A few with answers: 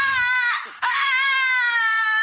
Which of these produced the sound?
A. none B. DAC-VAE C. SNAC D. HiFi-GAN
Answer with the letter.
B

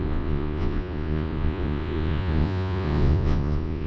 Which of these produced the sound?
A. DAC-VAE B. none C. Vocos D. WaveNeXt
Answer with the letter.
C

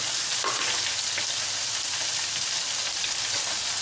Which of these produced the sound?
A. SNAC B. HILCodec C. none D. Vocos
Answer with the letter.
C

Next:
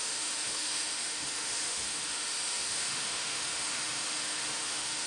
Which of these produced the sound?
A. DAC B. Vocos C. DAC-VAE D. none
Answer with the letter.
C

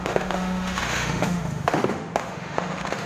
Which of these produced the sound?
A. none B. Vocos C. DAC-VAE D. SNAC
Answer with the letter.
C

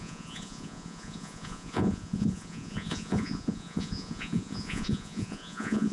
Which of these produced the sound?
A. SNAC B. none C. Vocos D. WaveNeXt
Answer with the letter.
C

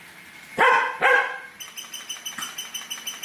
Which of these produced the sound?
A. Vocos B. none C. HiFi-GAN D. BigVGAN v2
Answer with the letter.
B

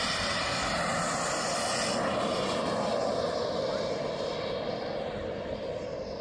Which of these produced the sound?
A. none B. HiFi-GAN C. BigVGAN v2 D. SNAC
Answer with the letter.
A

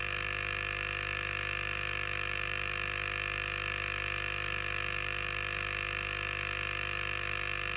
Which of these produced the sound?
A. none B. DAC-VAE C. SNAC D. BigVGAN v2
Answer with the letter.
B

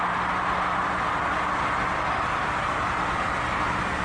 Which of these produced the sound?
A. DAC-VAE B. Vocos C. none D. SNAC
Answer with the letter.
C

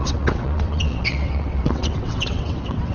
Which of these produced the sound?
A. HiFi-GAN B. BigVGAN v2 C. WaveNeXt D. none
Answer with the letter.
C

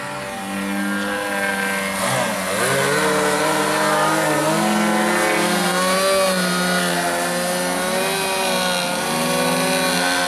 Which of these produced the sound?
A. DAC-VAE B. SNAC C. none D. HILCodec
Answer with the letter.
C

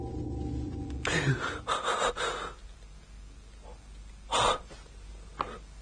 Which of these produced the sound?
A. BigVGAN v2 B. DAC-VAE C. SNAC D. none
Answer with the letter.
D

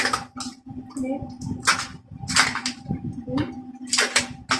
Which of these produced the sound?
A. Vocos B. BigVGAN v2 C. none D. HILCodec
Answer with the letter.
C